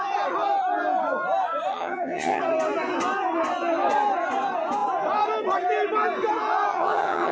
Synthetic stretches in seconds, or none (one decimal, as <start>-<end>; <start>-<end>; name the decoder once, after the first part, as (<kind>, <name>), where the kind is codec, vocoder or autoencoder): 1.7-2.4 (vocoder, HiFi-GAN); 6.7-7.3